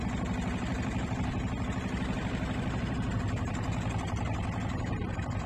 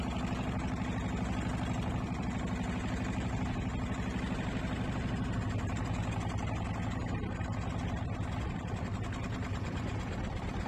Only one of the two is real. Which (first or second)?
second